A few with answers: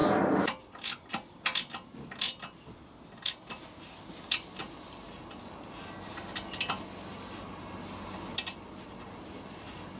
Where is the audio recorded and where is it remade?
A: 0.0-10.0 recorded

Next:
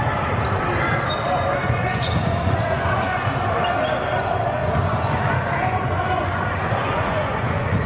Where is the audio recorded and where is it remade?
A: 0.0-1.6 recorded; 1.6-3.3 remade; 3.3-4.6 recorded; 4.6-7.9 remade

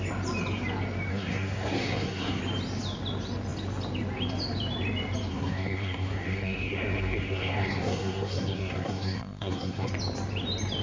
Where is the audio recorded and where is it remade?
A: 0.0-1.1 recorded; 1.1-2.4 remade; 2.4-5.3 recorded; 5.3-9.9 remade; 9.9-10.8 recorded

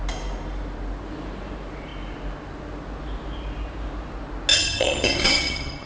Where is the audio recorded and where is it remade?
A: 0.0-4.5 recorded; 4.5-5.9 remade

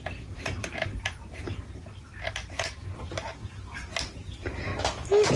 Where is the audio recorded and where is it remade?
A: 0.0-0.9 remade; 0.9-2.5 recorded; 2.5-4.7 remade; 4.7-5.4 recorded